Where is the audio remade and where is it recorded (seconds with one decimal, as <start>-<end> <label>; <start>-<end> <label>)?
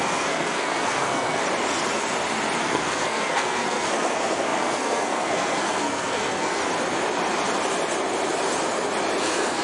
0.0-1.4 remade; 1.4-2.6 recorded; 2.6-6.6 remade; 6.6-9.2 recorded; 9.2-9.6 remade